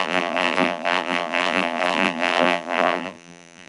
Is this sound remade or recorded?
remade